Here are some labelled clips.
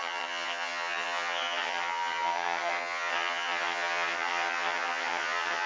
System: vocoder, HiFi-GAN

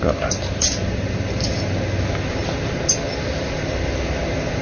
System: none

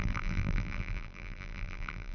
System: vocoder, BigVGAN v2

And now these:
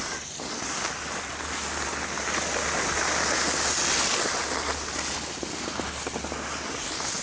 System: none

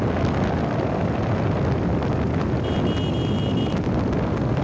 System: none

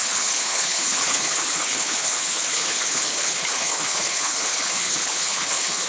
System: codec, HILCodec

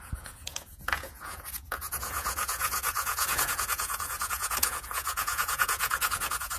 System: vocoder, Vocos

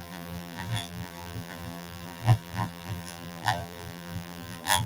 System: vocoder, BigVGAN v2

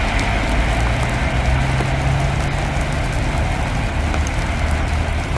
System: none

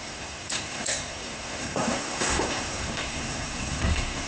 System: codec, SNAC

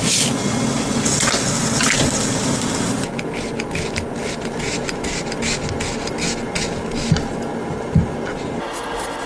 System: none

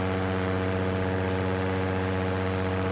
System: vocoder, Vocos